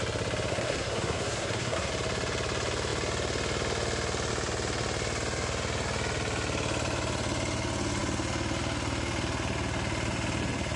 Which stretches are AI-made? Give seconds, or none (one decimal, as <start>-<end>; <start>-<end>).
0.5-1.9